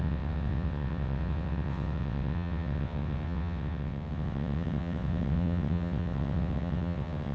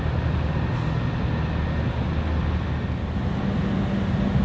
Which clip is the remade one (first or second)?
first